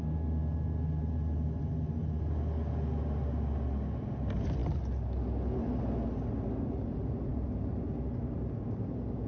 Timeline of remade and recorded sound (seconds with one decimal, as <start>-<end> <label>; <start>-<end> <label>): 0.0-9.3 recorded